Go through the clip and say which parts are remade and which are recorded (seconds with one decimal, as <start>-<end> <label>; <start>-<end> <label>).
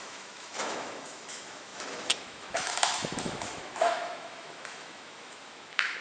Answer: 0.0-6.0 remade